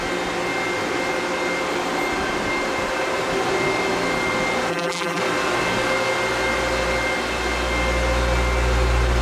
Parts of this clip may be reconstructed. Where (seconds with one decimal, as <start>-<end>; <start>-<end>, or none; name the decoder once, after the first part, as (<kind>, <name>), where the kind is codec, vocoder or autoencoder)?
4.7-5.2 (vocoder, BigVGAN v2)